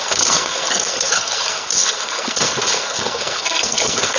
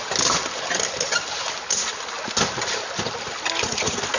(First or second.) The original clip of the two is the second